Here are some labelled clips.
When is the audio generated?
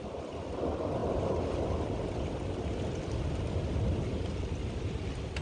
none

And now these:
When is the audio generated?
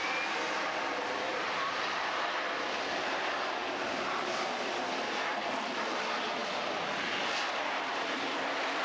none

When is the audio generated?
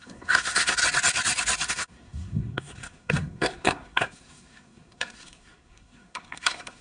0.0-0.8 (codec, SNAC); 1.7-6.8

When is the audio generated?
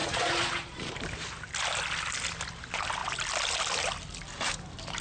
0.0-0.9 (vocoder, Vocos)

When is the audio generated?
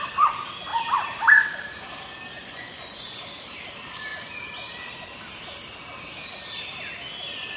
2.4-3.2 (vocoder, Vocos)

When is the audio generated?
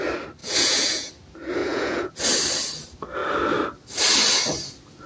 0.4-1.1 (vocoder, Vocos); 1.6-2.2